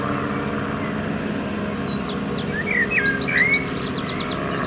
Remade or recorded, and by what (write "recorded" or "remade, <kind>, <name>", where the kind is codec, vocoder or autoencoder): recorded